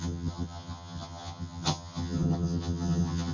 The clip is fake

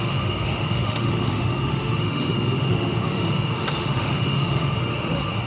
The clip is fake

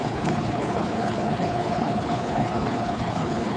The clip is fake